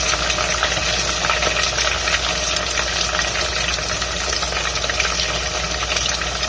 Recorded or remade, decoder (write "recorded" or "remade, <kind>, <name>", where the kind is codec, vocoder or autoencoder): recorded